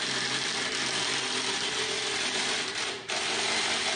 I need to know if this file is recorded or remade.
recorded